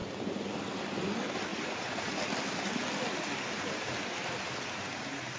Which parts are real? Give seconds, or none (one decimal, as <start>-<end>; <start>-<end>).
0.0-1.5; 2.2-5.4